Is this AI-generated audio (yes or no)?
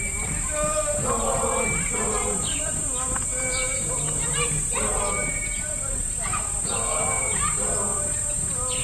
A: no